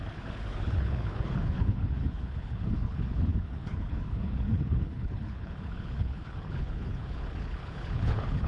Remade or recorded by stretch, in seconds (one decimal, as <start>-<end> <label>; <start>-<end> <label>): 0.0-8.5 remade